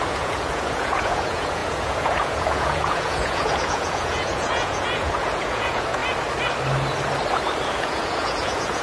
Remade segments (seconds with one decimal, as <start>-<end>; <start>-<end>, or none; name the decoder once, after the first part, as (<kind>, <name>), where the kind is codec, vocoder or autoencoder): 0.0-6.0 (vocoder, Vocos); 7.8-8.8